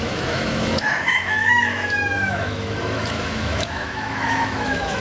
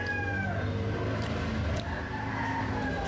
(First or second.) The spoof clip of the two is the first